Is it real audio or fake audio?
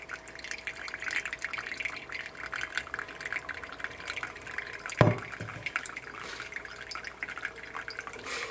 fake